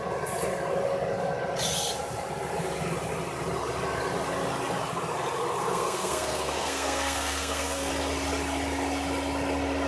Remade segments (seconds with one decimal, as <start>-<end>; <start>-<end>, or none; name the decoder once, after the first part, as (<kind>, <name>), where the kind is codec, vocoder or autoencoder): 5.6-7.9 (codec, SNAC)